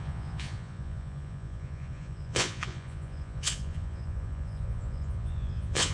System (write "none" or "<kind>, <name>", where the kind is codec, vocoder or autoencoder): vocoder, Vocos